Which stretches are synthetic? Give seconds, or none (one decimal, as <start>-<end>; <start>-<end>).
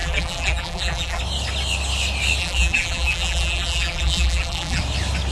0.0-1.2; 2.4-4.8